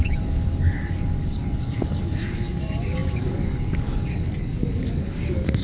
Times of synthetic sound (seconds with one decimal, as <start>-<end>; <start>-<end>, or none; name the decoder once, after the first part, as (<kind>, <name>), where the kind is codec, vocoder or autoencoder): 0.0-5.6 (codec, DAC)